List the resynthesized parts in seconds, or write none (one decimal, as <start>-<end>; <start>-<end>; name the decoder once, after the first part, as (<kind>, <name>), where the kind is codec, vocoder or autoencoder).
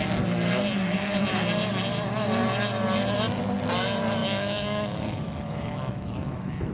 4.2-6.7 (autoencoder, DAC-VAE)